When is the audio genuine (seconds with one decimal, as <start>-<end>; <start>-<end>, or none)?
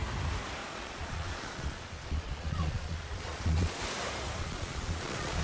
0.0-0.6; 3.8-4.4